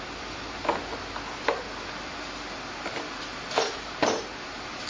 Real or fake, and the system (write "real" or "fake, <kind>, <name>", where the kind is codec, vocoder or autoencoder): real